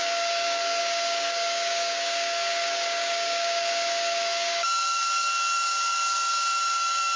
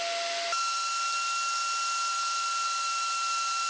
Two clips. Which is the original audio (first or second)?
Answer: second